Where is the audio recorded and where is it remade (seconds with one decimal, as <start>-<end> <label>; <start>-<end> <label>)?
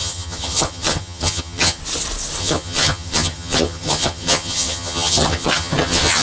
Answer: 0.0-1.8 remade; 1.8-2.4 recorded; 2.4-6.2 remade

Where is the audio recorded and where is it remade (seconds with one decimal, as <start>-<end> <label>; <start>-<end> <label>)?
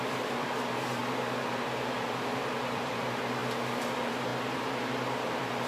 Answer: 0.0-1.0 remade; 1.0-2.0 recorded; 2.0-3.4 remade; 3.4-3.9 recorded; 3.9-5.7 remade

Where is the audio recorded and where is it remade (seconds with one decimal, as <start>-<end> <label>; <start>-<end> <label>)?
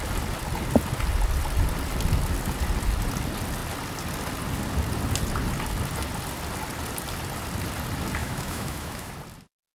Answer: 0.0-8.2 recorded; 8.2-9.1 remade; 9.1-9.7 recorded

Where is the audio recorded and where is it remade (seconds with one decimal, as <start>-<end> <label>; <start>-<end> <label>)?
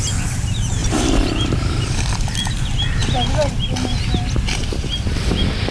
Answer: 0.0-0.8 recorded; 0.8-2.1 remade; 2.1-5.7 recorded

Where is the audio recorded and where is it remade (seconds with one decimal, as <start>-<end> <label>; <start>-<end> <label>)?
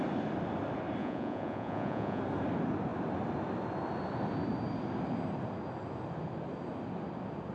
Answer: 0.0-1.0 recorded; 1.0-2.2 remade; 2.2-7.5 recorded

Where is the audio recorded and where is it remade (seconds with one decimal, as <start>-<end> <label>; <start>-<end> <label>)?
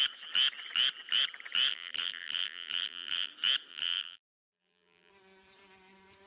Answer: 0.0-1.7 recorded; 1.7-3.3 remade; 3.3-3.7 recorded; 3.7-5.1 remade; 5.1-6.3 recorded